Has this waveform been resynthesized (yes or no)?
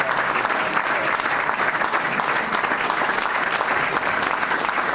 no